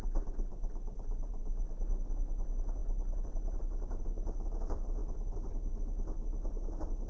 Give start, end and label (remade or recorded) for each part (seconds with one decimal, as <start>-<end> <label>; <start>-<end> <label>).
0.0-7.1 recorded